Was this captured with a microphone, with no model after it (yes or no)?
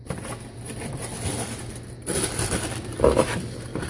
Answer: yes